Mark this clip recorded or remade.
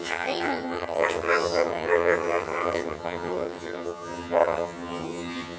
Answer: remade